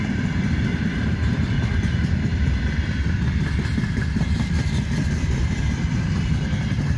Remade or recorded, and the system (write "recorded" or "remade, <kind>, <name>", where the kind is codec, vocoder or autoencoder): remade, vocoder, BigVGAN v2